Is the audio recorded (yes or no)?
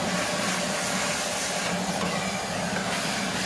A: yes